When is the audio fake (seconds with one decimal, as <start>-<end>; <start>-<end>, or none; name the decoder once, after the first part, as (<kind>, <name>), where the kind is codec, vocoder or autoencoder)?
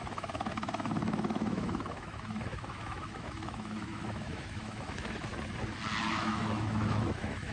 0.0-5.3 (autoencoder, DAC-VAE); 6.1-7.5